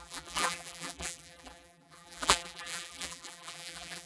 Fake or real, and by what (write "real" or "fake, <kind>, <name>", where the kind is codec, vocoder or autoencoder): fake, vocoder, BigVGAN v2